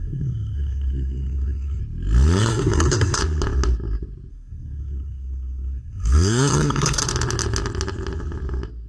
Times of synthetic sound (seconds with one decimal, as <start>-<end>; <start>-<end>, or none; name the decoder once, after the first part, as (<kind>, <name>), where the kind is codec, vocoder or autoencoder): 0.0-1.8 (codec, SNAC); 2.5-3.2; 4.3-7.0